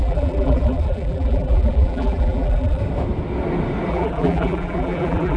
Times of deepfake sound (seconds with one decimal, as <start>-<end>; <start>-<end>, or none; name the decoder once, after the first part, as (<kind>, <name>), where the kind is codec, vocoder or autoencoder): 0.0-2.8 (vocoder, BigVGAN v2); 3.9-5.4